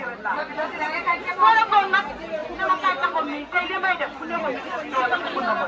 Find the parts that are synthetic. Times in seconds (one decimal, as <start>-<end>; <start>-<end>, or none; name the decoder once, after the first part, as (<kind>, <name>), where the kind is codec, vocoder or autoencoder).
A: none